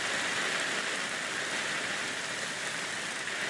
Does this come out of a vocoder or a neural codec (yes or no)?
no